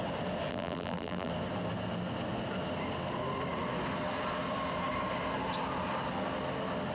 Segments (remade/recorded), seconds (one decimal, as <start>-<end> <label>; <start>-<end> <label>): 0.0-0.5 recorded; 0.5-1.3 remade; 1.3-6.9 recorded